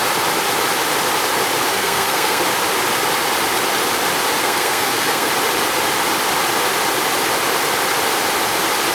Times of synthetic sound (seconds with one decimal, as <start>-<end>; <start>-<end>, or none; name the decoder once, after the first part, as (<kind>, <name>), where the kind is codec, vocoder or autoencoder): 1.7-2.4 (codec, SNAC); 4.4-5.3